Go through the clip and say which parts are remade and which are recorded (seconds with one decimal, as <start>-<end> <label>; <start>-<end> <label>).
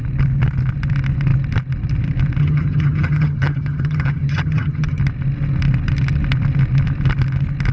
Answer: 0.0-2.4 recorded; 2.4-5.0 remade; 5.0-7.7 recorded